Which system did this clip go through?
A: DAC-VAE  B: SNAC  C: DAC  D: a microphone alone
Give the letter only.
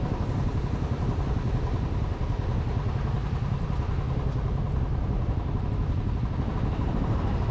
D